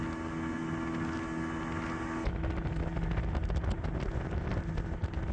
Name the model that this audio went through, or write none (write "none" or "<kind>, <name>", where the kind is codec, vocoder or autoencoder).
none